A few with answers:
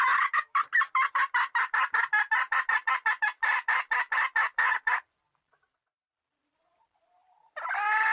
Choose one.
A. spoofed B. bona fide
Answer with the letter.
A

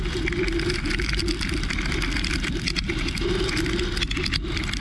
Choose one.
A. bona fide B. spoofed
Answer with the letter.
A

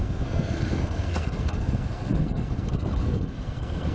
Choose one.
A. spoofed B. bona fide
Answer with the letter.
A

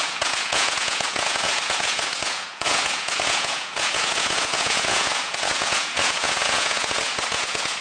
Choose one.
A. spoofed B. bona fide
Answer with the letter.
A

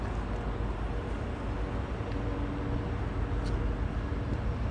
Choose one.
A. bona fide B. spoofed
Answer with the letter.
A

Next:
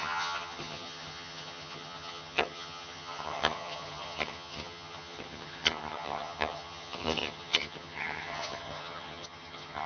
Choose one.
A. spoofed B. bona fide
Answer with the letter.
A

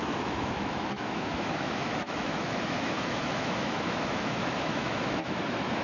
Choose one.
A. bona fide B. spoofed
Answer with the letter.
B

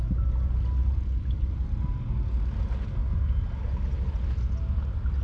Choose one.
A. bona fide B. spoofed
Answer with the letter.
A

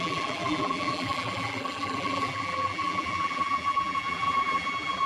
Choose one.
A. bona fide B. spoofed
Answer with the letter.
B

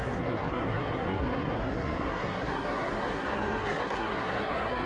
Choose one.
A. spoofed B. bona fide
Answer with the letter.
A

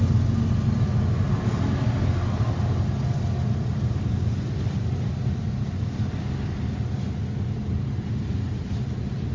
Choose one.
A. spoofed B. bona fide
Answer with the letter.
B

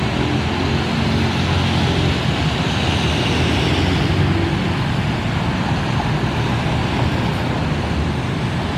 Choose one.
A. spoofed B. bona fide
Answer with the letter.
B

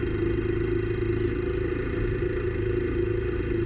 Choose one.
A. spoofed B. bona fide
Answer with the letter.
B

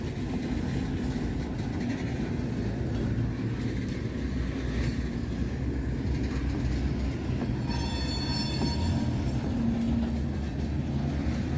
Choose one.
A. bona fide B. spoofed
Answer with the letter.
A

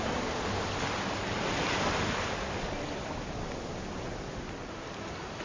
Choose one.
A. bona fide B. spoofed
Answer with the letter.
A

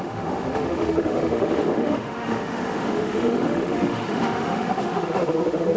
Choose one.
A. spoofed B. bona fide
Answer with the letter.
A